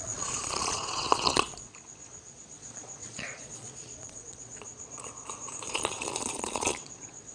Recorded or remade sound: remade